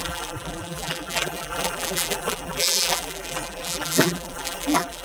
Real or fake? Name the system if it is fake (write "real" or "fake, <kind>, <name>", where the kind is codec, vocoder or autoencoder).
fake, vocoder, BigVGAN v2